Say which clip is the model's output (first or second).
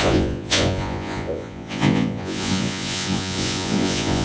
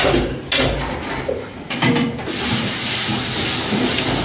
first